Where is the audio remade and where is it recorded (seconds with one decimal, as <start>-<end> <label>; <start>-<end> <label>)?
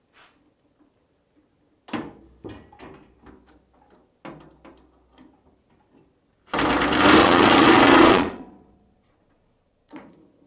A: 0.0-7.2 recorded; 7.2-10.1 remade; 10.1-10.5 recorded